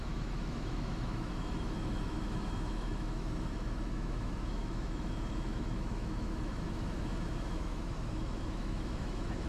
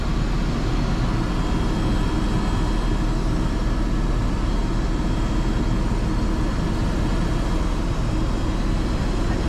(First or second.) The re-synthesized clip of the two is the first